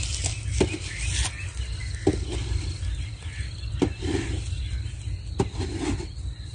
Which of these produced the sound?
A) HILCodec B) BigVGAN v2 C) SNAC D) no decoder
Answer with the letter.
D